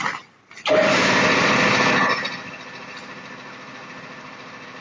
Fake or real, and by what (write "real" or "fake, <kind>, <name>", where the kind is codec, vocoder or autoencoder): real